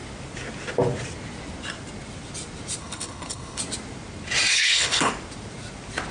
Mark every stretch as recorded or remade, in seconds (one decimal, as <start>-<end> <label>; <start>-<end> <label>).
0.0-2.8 recorded; 2.8-3.6 remade; 3.6-4.5 recorded; 4.5-5.1 remade; 5.1-6.1 recorded